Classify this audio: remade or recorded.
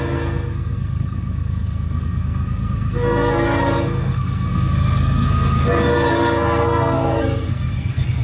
remade